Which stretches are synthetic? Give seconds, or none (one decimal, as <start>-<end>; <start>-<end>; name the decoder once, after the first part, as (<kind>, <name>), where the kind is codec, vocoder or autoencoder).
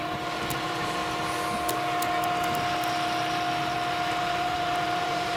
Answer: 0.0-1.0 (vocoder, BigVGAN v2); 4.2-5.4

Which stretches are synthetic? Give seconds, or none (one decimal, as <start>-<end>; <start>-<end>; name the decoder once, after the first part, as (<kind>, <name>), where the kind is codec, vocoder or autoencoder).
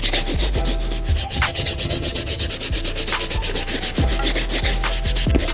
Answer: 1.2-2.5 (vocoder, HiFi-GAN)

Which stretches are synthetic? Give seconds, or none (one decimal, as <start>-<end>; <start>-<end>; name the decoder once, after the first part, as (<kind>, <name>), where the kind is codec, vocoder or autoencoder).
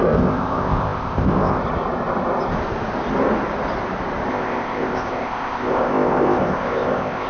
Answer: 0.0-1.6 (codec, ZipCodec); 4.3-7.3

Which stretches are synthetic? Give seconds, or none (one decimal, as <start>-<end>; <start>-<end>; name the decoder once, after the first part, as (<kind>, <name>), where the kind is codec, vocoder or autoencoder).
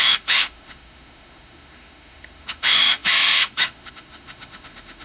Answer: 0.0-5.0 (autoencoder, DAC-VAE)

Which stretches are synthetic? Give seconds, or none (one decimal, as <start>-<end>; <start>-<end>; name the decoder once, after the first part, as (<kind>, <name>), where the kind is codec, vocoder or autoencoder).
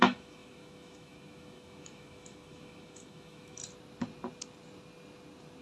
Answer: 0.0-3.6 (autoencoder, DAC-VAE)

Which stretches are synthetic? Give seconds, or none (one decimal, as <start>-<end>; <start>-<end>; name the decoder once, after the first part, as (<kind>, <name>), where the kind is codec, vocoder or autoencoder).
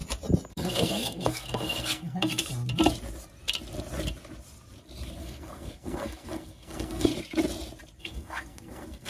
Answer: 0.5-2.5 (codec, SNAC); 5.2-7.1; 8.0-9.1